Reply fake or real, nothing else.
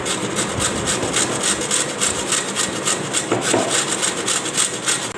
real